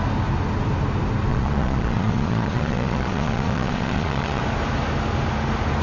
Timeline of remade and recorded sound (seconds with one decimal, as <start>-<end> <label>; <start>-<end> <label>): 0.0-1.3 recorded; 1.3-4.4 remade; 4.4-5.8 recorded